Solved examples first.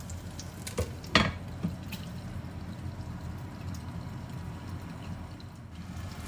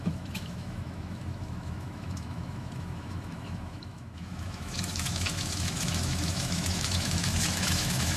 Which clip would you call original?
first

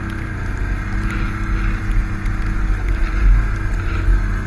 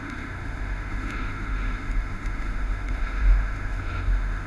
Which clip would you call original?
first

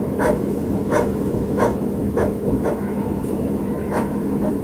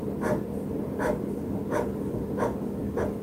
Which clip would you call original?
second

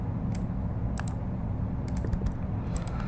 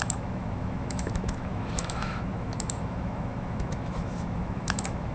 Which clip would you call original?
first